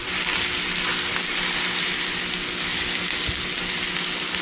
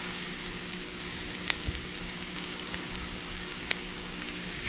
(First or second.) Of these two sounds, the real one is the first